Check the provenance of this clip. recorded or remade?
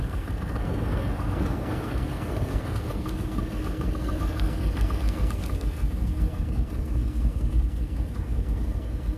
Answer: remade